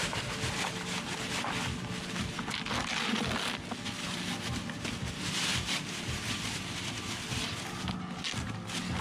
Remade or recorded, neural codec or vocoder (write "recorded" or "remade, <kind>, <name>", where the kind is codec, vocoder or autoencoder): recorded